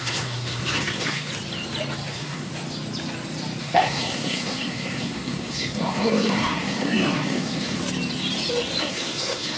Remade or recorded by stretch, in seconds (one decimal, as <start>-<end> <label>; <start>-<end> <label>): 0.0-1.3 remade; 1.3-2.1 recorded; 2.1-2.5 remade; 2.5-3.6 recorded; 3.6-7.8 remade; 7.8-8.8 recorded; 8.8-9.6 remade